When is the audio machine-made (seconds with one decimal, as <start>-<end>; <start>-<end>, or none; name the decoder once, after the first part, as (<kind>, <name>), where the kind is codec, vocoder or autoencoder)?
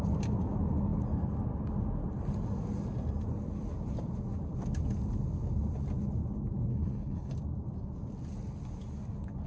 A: 6.7-7.3 (codec, HILCodec)